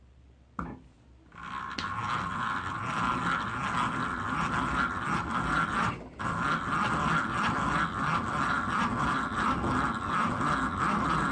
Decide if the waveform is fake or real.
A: real